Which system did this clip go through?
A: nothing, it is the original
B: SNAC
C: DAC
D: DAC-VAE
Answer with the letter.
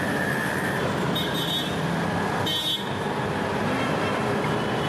A